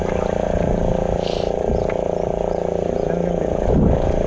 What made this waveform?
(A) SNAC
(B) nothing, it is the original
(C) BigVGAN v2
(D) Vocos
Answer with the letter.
B